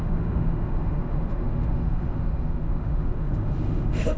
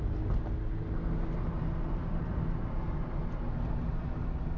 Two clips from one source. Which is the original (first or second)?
second